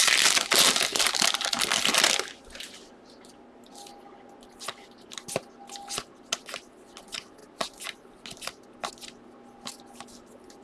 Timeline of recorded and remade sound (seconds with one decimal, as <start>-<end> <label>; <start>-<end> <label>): 0.0-10.6 recorded